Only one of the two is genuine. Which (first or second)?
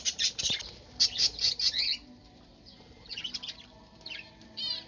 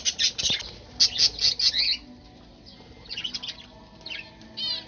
second